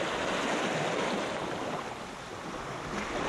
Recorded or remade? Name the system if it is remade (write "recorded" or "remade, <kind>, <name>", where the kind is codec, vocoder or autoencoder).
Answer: recorded